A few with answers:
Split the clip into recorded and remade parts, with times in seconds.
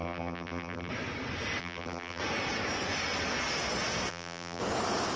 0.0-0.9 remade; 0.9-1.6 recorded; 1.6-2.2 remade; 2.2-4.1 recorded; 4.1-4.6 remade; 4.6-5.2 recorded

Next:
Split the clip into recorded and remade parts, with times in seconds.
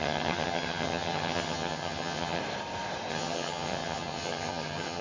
0.0-2.4 remade; 2.4-3.1 recorded; 3.1-5.0 remade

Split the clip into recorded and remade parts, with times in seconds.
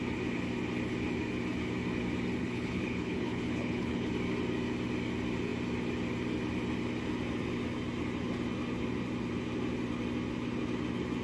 0.0-2.4 recorded; 2.4-4.1 remade; 4.1-11.2 recorded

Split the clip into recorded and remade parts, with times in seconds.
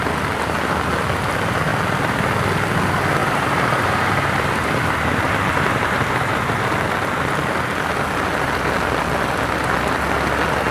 0.0-3.2 recorded; 3.2-4.0 remade; 4.0-5.5 recorded; 5.5-6.7 remade; 6.7-10.7 recorded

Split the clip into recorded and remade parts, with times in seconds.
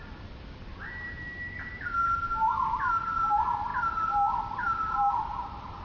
0.0-5.8 recorded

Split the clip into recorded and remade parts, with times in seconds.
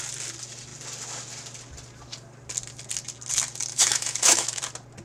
0.0-3.7 recorded; 3.7-4.6 remade; 4.6-5.0 recorded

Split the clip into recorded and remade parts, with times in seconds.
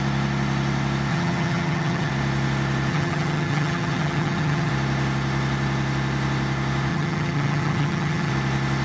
0.0-1.1 recorded; 1.1-2.1 remade; 2.1-2.9 recorded; 2.9-4.7 remade; 4.7-6.9 recorded; 6.9-8.3 remade; 8.3-8.8 recorded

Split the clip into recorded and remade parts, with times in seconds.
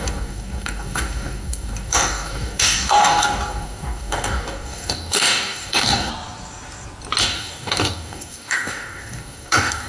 0.0-6.1 remade; 6.1-7.2 recorded; 7.2-9.9 remade